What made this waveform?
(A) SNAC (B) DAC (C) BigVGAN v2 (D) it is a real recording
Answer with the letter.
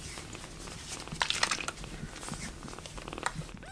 D